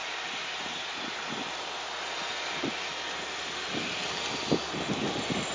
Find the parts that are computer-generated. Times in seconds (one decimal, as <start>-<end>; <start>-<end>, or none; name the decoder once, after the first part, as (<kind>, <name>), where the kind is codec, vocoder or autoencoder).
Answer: 0.0-1.3 (vocoder, BigVGAN v2)